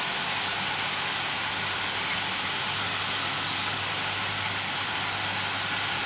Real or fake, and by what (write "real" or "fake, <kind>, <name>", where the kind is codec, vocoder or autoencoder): fake, vocoder, BigVGAN v2